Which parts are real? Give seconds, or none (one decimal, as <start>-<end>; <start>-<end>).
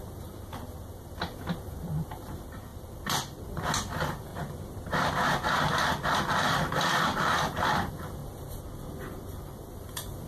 4.3-6.2; 8.2-8.9